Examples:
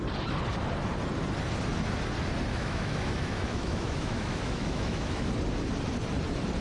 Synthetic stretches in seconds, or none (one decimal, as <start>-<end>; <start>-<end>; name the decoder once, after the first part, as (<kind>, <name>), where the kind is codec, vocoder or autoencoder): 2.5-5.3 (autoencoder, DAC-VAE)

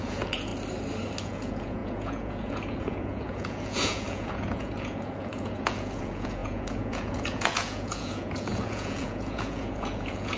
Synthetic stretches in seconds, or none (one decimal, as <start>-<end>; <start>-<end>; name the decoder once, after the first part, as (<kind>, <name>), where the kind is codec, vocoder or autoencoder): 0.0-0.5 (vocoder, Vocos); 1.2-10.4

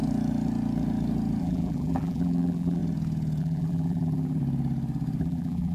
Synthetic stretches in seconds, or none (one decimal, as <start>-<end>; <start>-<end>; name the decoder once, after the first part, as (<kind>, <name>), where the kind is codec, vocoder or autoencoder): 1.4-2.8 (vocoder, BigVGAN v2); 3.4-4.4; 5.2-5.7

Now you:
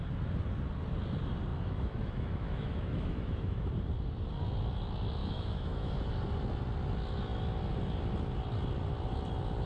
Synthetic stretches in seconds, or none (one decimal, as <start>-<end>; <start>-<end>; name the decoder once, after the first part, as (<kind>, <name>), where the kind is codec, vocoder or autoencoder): 1.5-3.7 (autoencoder, DAC-VAE); 5.2-6.1

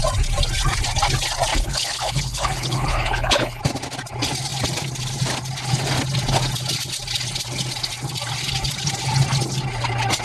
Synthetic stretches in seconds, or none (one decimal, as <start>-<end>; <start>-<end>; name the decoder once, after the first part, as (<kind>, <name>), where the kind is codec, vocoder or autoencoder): 1.5-3.6 (codec, HILCodec)

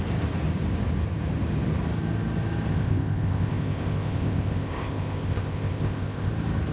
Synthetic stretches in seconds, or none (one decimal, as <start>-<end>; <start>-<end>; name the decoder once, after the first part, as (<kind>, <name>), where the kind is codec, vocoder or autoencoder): 2.7-6.3 (codec, ZipCodec)

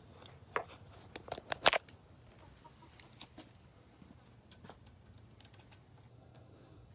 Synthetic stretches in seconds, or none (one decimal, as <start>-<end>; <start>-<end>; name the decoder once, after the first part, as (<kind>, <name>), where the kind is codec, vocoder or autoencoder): 6.1-6.9 (codec, SNAC)